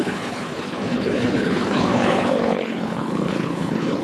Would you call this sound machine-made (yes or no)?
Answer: yes